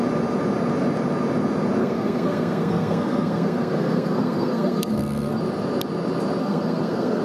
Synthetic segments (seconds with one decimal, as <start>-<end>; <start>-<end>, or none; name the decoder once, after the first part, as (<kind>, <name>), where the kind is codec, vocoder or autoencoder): 1.8-5.4 (codec, SNAC); 6.4-7.2